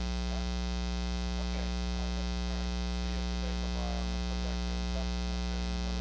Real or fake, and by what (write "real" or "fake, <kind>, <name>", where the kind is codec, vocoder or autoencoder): real